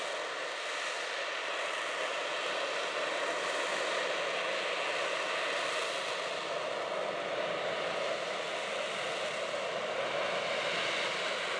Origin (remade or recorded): recorded